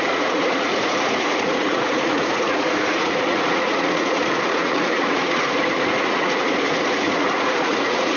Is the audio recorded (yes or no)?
no